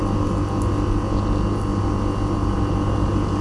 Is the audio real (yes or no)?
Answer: yes